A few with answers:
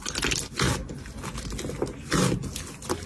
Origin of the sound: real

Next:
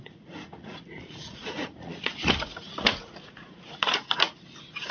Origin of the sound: fake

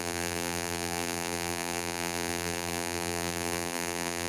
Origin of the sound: fake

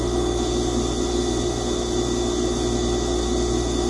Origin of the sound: real